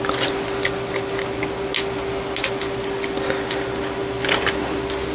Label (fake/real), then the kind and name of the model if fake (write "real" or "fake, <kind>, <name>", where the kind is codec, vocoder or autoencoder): real